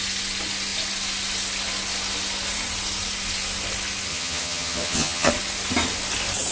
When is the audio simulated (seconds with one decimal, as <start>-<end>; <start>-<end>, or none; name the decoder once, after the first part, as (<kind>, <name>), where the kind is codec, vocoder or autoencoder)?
4.1-5.3 (vocoder, HiFi-GAN)